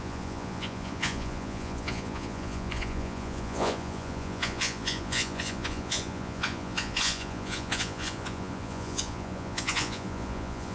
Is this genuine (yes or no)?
no